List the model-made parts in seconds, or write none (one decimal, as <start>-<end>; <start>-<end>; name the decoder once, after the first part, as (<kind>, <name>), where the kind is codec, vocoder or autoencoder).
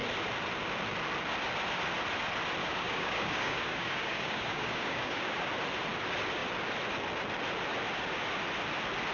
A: 2.6-5.5 (codec, DAC)